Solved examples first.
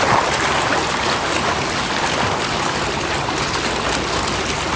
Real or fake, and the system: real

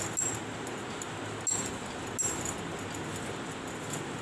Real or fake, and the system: real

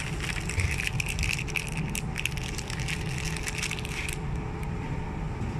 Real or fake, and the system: real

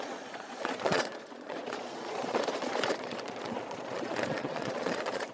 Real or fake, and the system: fake, vocoder, Vocos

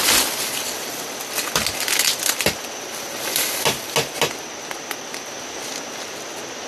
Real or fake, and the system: real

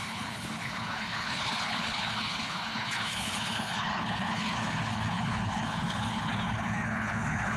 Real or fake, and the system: fake, codec, HILCodec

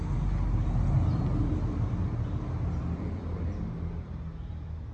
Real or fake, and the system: real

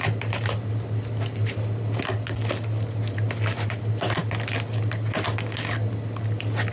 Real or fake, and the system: real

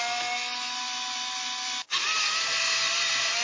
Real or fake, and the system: real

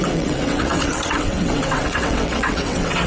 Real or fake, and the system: fake, vocoder, WaveNeXt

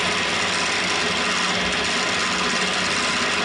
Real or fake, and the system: real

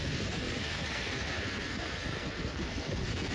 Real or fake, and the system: fake, codec, SNAC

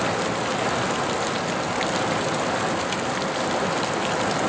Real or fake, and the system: real